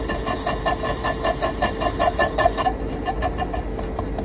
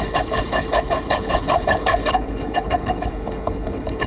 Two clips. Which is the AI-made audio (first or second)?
second